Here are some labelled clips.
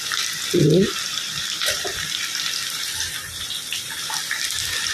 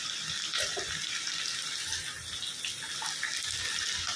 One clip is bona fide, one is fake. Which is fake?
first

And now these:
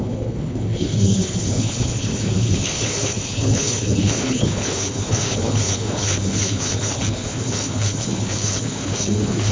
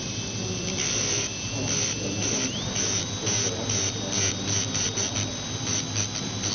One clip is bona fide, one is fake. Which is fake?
first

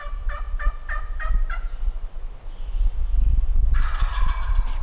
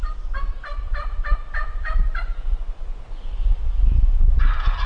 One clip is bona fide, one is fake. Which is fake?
second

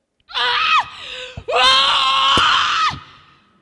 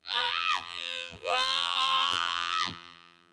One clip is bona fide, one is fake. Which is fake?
second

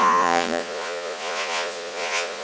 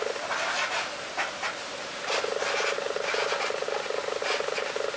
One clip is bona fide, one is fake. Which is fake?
first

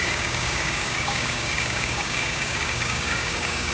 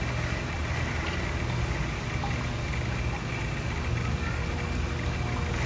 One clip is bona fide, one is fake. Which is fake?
first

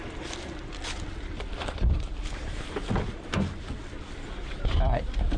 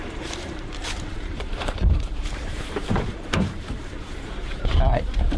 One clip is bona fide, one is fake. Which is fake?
second